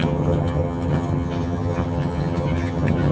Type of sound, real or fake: fake